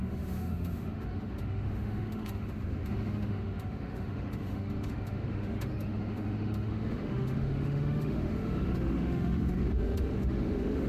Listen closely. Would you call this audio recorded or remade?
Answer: remade